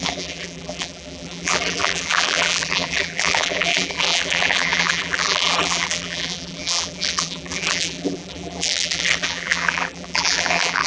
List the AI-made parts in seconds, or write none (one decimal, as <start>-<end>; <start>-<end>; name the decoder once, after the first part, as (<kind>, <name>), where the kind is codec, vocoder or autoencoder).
0.0-10.9 (vocoder, BigVGAN v2)